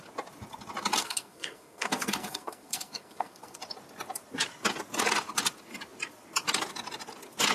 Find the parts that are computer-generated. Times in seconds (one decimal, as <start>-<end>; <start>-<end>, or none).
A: 1.0-3.6